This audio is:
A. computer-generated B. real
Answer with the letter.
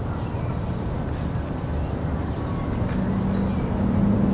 B